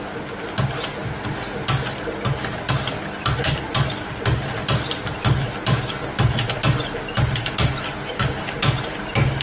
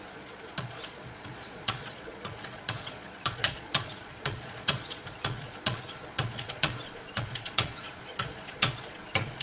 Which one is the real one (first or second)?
first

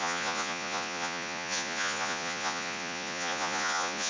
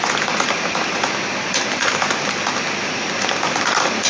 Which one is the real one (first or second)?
second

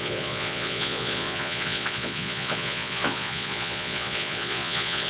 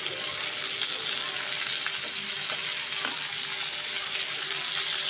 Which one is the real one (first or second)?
second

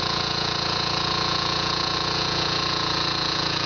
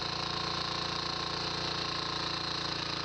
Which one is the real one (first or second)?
second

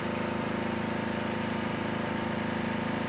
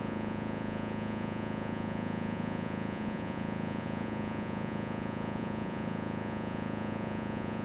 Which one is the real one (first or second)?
first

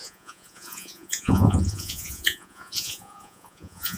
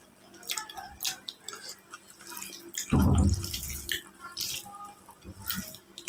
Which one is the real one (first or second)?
second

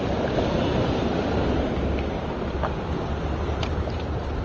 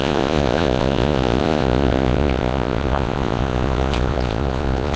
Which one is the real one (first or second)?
first